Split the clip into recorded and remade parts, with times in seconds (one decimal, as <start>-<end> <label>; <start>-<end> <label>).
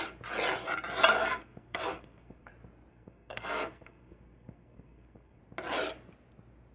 0.0-1.2 recorded; 1.2-2.5 remade; 2.5-2.9 recorded; 2.9-5.4 remade; 5.4-6.7 recorded